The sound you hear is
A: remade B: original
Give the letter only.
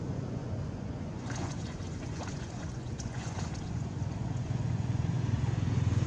A